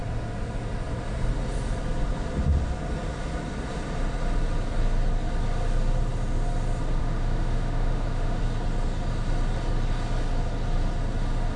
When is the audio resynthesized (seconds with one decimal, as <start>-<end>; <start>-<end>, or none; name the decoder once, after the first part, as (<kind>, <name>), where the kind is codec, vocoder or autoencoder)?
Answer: 7.0-8.4 (autoencoder, DAC-VAE)